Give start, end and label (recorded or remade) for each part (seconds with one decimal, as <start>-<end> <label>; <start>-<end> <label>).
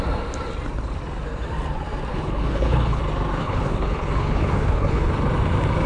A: 0.0-2.1 recorded; 2.1-3.0 remade; 3.0-3.4 recorded; 3.4-5.1 remade; 5.1-5.9 recorded